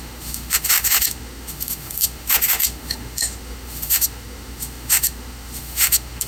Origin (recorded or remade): remade